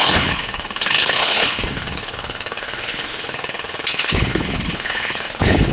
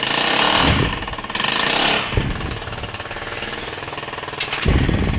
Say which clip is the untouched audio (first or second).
second